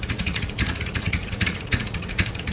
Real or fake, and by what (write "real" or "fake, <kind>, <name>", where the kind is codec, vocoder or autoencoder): fake, vocoder, Vocos